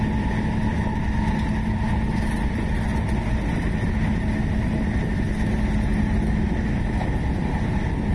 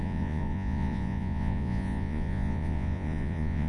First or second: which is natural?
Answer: first